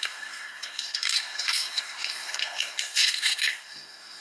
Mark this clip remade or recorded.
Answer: remade